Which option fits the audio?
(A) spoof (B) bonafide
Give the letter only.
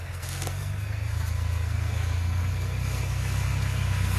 A